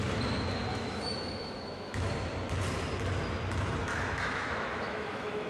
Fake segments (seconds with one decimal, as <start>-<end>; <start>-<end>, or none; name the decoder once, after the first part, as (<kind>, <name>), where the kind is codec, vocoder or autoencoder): 0.7-2.1 (autoencoder, DAC-VAE); 3.9-5.5